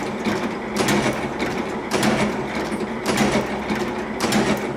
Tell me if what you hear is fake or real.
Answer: real